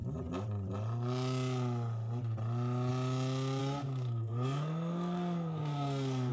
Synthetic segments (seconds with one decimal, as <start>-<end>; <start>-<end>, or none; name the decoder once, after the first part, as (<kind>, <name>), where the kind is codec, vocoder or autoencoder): 3.6-6.3 (codec, SNAC)